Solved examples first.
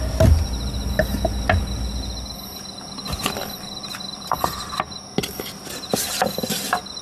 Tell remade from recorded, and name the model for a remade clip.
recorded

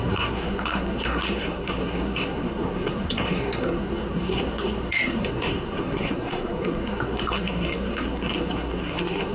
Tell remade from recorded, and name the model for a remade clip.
remade, codec, SNAC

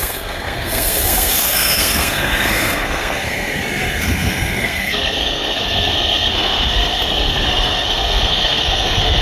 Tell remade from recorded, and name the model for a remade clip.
remade, codec, SNAC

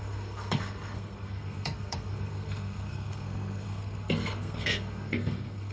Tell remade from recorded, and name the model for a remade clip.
remade, codec, SNAC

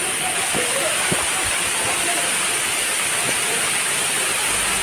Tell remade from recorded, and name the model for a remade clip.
recorded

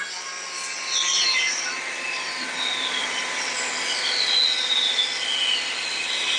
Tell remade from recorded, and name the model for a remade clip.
recorded